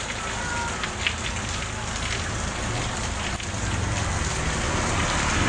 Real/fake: real